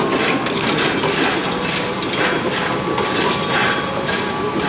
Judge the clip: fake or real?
real